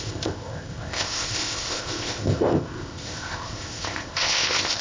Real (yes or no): no